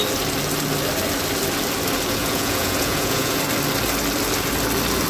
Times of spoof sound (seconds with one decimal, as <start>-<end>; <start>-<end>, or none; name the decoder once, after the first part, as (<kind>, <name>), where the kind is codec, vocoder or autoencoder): 2.2-3.4 (vocoder, Vocos)